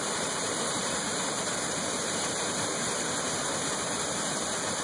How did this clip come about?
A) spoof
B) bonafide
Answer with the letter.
A